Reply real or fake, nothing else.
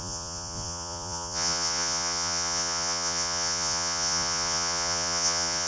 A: fake